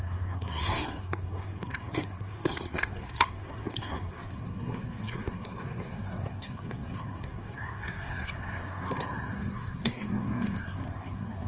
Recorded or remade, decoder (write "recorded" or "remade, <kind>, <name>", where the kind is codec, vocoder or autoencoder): remade, codec, SNAC